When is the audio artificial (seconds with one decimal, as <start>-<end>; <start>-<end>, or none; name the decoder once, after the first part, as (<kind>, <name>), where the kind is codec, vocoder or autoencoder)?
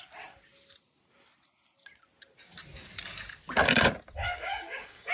4.2-5.1 (codec, DAC)